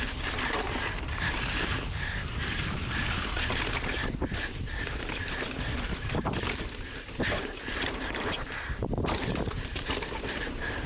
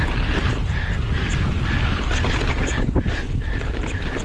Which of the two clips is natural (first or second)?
second